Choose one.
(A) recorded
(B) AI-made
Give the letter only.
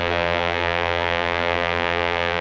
B